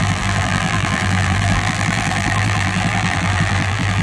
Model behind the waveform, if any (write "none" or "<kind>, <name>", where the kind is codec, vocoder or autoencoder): vocoder, BigVGAN v2